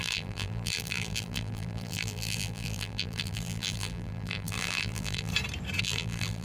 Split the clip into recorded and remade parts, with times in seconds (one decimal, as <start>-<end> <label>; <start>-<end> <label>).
0.0-5.3 remade; 5.3-5.8 recorded; 5.8-6.4 remade

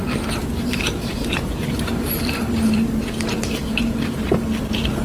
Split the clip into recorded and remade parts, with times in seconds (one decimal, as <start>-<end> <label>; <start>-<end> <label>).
0.0-0.4 recorded; 0.4-3.0 remade; 3.0-3.6 recorded; 3.6-5.0 remade

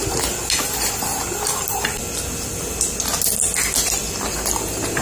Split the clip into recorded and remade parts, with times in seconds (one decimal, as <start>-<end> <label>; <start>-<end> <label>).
0.0-5.0 recorded

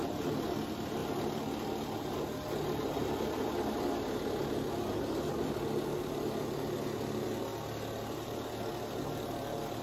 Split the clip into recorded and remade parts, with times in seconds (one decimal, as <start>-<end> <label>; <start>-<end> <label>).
0.0-9.8 recorded

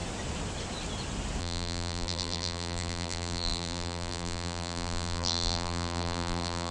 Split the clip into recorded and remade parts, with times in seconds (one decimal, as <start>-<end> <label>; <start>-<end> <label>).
0.0-1.4 recorded; 1.4-6.7 remade

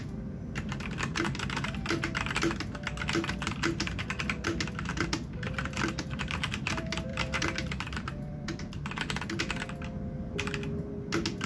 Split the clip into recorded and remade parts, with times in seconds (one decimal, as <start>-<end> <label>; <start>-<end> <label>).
0.0-4.9 recorded; 4.9-6.6 remade; 6.6-7.1 recorded; 7.1-8.6 remade; 8.6-11.5 recorded

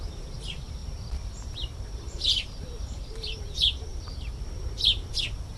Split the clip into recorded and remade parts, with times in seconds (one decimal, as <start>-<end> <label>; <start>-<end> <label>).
0.0-5.6 remade

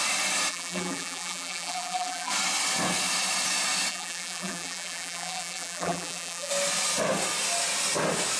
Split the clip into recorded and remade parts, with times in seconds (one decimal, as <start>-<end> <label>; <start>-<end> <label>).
0.0-0.5 recorded; 0.5-2.3 remade; 2.3-3.9 recorded; 3.9-6.5 remade; 6.5-8.4 recorded